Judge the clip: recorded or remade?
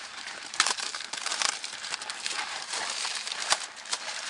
remade